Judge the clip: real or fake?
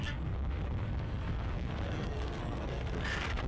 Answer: fake